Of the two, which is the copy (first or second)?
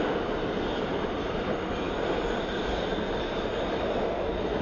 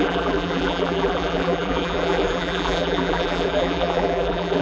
second